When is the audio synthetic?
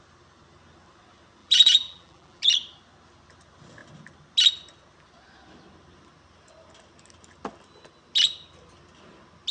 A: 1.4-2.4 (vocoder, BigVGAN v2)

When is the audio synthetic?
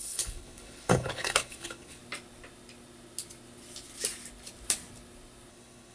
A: 0.0-2.0 (codec, HILCodec); 5.5-5.9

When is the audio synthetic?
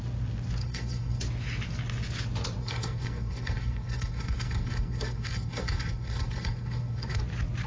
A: 0.6-1.2 (codec, SNAC); 2.6-7.2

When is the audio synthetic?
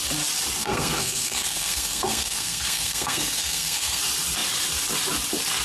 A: 0.6-4.0 (codec, SNAC)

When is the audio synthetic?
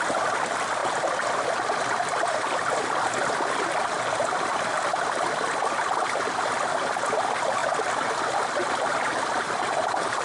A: none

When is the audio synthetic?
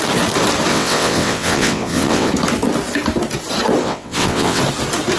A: 0.7-2.3 (vocoder, WaveNeXt); 3.8-4.6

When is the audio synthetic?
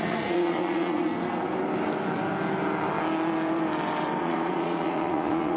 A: 0.0-1.1 (vocoder, Vocos); 4.2-5.6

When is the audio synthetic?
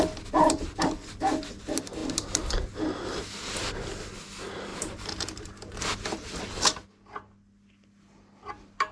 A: 4.7-5.7 (vocoder, BigVGAN v2)